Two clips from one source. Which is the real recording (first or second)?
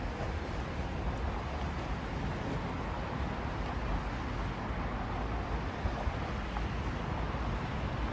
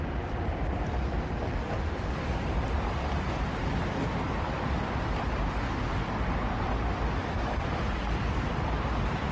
first